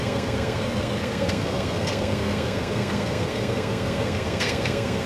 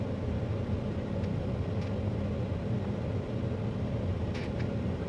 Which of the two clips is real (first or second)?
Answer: second